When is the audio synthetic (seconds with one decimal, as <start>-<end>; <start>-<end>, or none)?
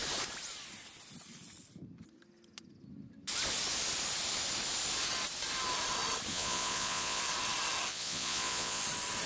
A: 6.3-7.2; 7.9-8.8